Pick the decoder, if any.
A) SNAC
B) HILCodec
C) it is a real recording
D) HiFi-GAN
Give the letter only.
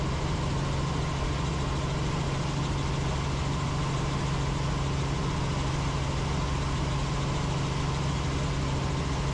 C